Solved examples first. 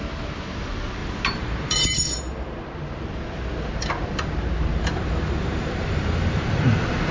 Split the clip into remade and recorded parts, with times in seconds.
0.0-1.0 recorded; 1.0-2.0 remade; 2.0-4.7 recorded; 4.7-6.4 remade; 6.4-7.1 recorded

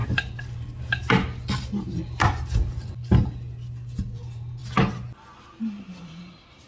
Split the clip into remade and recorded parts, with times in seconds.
0.0-4.0 recorded; 4.0-4.6 remade; 4.6-5.8 recorded; 5.8-6.7 remade

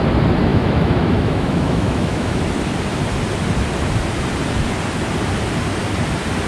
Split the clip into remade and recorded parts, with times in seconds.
0.0-0.5 recorded; 0.5-2.4 remade; 2.4-6.5 recorded